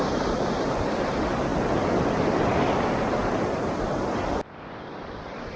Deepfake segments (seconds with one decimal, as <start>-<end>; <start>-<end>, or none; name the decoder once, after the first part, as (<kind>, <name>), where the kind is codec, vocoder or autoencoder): none